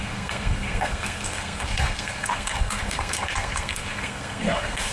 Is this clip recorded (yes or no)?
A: no